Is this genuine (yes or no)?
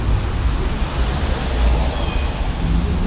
yes